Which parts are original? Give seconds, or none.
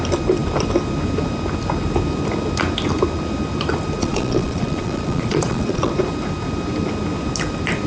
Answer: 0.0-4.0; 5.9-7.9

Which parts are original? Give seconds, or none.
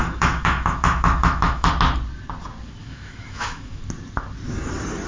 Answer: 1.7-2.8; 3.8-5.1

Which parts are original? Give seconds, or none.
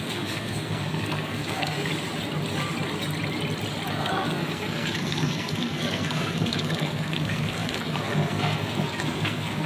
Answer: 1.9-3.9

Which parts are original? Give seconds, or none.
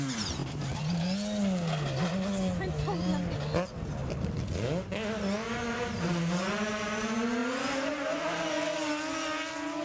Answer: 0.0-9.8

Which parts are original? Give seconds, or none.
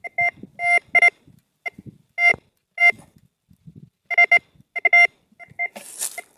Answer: 0.0-6.4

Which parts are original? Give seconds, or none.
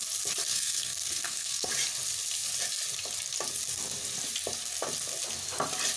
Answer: 0.0-0.5; 1.7-6.0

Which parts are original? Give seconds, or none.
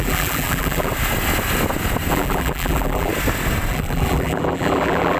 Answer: 0.9-2.1; 3.1-3.7